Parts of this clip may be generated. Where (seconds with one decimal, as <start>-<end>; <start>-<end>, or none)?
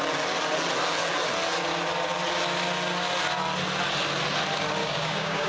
4.8-5.5